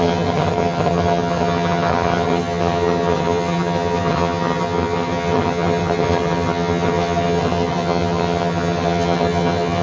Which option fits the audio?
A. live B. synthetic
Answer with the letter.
B